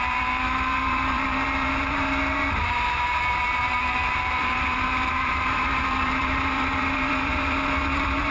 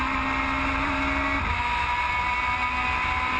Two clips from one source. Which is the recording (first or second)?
second